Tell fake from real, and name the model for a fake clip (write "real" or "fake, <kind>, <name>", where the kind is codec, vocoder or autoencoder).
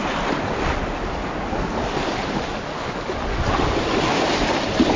real